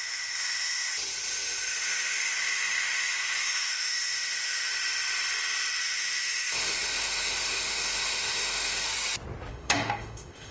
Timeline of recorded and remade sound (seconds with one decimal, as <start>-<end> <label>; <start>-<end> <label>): 0.0-0.9 remade; 0.9-1.7 recorded; 1.7-4.7 remade; 4.7-5.8 recorded; 5.8-8.9 remade; 8.9-9.5 recorded; 9.5-10.5 remade